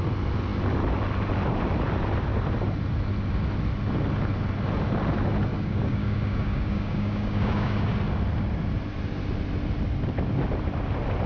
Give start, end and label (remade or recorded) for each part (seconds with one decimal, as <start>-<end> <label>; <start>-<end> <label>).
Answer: 0.0-5.5 recorded; 5.5-7.9 remade; 7.9-11.3 recorded